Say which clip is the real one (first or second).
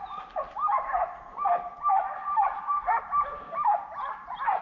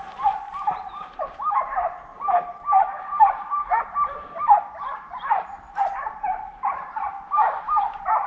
first